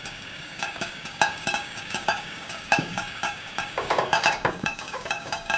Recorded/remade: remade